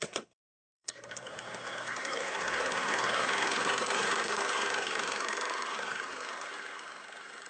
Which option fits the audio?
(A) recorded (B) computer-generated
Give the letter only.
B